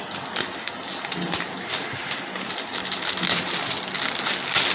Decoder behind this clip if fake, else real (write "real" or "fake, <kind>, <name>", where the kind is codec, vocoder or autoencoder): real